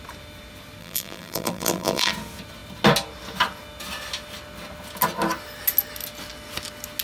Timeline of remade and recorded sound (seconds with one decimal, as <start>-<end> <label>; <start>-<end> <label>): 0.0-0.8 recorded; 0.8-2.1 remade; 2.1-7.0 recorded